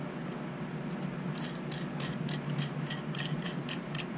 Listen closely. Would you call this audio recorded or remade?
recorded